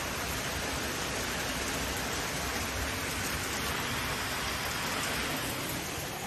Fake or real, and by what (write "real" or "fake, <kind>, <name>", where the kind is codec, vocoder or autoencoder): real